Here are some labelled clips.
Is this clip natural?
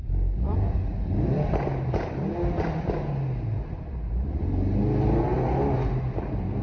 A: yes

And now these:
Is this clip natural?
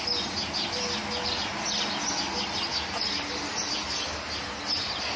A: yes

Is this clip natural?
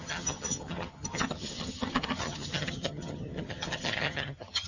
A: no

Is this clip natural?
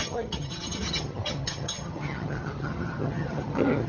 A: no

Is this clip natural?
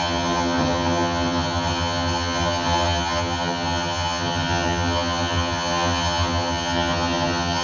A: no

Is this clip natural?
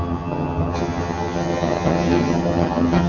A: no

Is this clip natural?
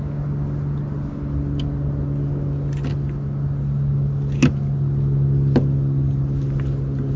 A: yes